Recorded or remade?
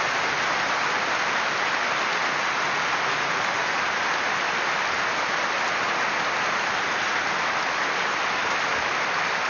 recorded